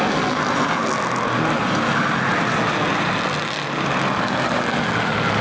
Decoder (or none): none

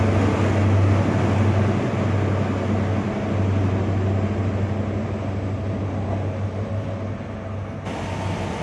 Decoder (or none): none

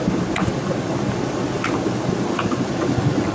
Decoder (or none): none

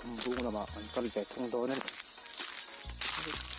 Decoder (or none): none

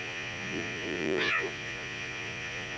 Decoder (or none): vocoder, Vocos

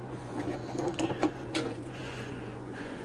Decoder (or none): vocoder, Vocos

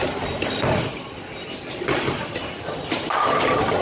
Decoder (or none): none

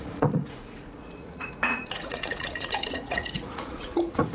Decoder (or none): vocoder, Vocos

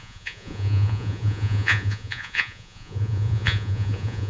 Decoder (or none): vocoder, Vocos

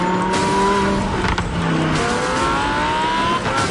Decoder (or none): none